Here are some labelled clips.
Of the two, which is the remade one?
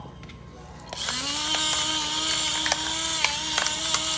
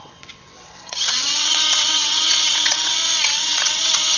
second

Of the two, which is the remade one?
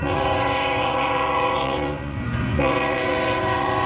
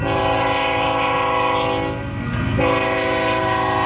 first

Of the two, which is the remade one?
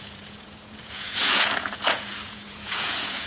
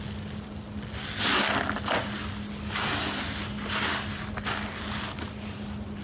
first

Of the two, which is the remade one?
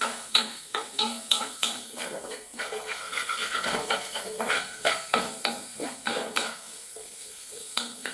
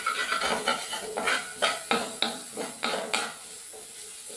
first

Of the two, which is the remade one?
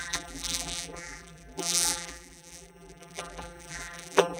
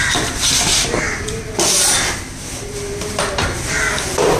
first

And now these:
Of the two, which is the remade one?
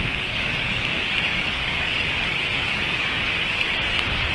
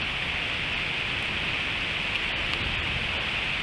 first